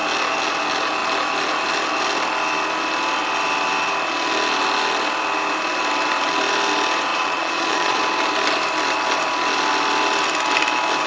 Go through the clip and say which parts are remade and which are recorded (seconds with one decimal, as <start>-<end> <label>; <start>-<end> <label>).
0.0-7.1 recorded; 7.1-8.0 remade; 8.0-11.1 recorded